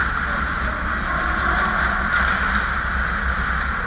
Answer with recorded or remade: recorded